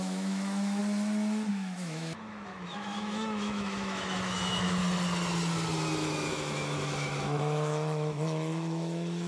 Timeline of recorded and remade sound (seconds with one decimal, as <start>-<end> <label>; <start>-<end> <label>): 0.0-0.8 remade; 0.8-1.5 recorded; 1.5-4.8 remade; 4.8-6.3 recorded; 6.3-9.3 remade